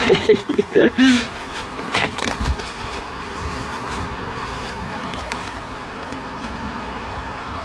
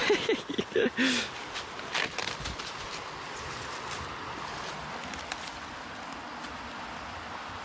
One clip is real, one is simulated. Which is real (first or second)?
second